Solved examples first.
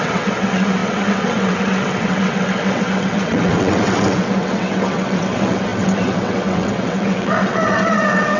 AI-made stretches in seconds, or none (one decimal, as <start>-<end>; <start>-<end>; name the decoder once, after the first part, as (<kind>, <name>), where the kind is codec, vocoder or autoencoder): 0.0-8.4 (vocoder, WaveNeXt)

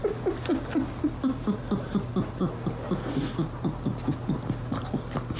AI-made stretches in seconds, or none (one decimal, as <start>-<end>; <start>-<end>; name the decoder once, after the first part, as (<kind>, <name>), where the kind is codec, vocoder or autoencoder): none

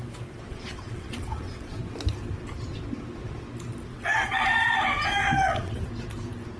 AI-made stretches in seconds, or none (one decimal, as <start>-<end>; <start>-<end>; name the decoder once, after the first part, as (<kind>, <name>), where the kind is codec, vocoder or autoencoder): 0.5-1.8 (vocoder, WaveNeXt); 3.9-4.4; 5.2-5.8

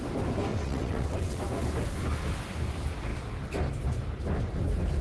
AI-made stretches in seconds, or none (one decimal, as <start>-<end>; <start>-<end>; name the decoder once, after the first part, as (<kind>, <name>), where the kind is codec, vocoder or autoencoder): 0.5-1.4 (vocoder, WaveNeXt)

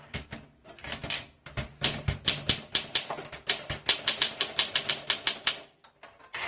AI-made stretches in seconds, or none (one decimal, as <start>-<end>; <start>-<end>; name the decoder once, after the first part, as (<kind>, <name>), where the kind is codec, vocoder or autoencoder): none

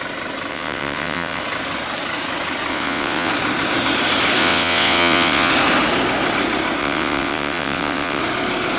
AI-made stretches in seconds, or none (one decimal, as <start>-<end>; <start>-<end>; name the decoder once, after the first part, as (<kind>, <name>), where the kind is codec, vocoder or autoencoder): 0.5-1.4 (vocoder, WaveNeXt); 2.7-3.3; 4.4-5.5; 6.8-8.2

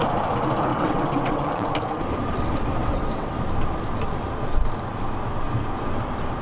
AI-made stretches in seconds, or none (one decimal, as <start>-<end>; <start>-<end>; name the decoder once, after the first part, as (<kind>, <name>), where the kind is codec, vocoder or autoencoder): 0.7-1.7 (vocoder, WaveNeXt); 2.8-3.3